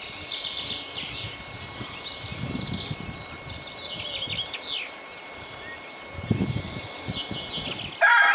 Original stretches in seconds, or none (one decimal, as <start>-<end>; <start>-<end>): 0.0-8.3